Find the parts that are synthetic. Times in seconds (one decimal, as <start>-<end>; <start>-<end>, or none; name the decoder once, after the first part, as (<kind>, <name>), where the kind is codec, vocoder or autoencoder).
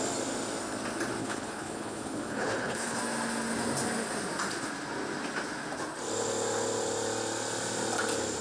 1.2-3.0 (codec, HILCodec)